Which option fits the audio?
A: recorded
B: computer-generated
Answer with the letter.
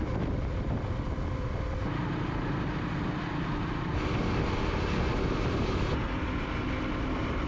A